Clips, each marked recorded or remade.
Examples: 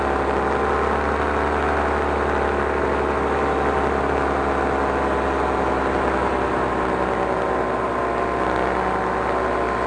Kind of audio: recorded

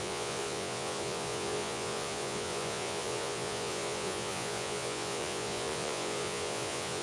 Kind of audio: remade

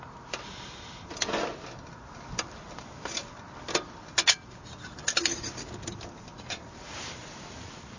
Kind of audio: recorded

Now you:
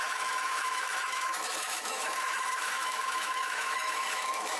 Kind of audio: remade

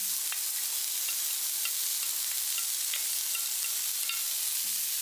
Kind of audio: recorded